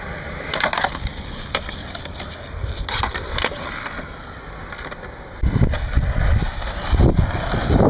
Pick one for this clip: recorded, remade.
recorded